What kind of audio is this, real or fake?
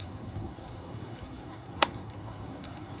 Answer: fake